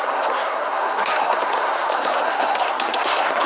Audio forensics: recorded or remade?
remade